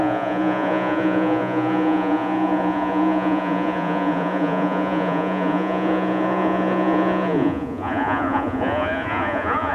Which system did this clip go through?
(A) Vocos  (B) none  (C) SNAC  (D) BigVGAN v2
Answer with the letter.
A